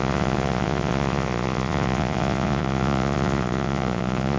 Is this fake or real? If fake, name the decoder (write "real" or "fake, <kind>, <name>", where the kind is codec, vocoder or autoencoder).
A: fake, vocoder, Vocos